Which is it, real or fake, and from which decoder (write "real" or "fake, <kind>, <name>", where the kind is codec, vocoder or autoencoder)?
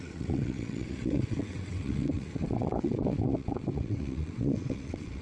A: fake, vocoder, WaveNeXt